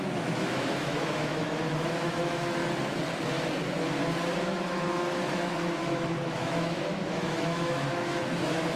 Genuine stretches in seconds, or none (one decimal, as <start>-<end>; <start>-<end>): 2.6-4.4